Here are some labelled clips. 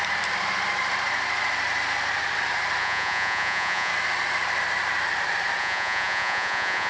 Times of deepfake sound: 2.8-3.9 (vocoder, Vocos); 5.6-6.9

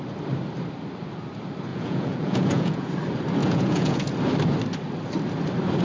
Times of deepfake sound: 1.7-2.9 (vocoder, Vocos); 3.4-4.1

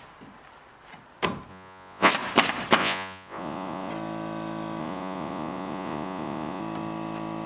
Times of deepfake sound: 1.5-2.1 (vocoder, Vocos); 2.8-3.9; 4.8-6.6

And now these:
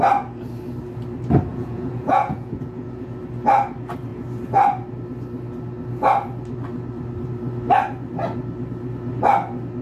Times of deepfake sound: 1.5-3.2 (vocoder, Vocos)

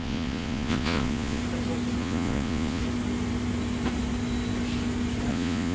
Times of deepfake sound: 0.0-1.4 (vocoder, Vocos); 2.0-2.8; 5.3-5.7

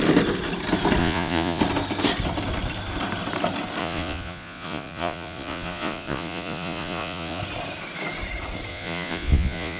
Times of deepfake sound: 1.0-1.6 (vocoder, Vocos); 3.8-7.4; 8.7-9.8